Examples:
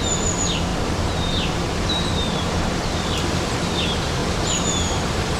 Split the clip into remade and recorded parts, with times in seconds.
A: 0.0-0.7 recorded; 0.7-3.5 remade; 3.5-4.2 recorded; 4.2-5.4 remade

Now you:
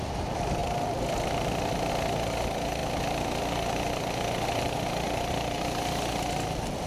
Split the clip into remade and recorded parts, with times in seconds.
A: 0.0-0.6 recorded; 0.6-1.9 remade; 1.9-6.9 recorded